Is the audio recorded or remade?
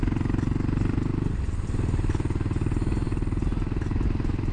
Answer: recorded